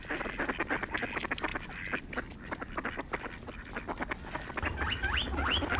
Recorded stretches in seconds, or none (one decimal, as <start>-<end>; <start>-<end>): 0.0-5.8